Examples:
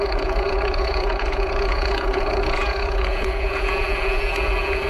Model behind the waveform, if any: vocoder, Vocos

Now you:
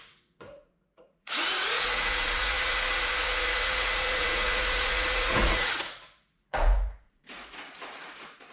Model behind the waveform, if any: vocoder, Vocos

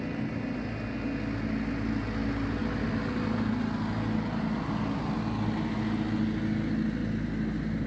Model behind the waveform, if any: none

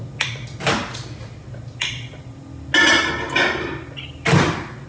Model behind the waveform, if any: none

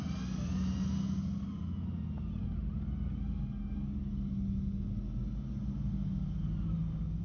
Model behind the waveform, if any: none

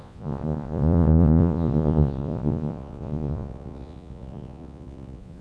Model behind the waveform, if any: vocoder, Vocos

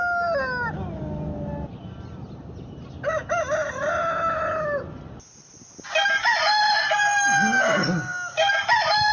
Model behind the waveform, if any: none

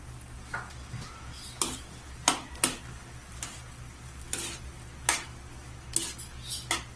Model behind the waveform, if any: none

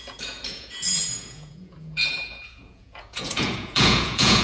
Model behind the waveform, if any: vocoder, Vocos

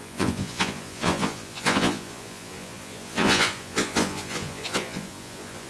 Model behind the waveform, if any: vocoder, Vocos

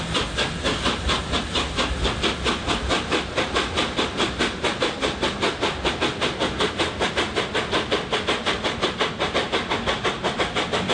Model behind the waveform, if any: none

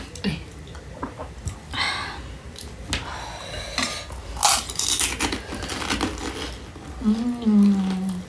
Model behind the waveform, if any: none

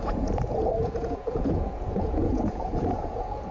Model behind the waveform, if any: vocoder, Vocos